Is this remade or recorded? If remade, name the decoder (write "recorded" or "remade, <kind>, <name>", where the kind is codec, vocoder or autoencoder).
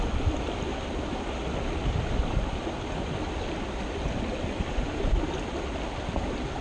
recorded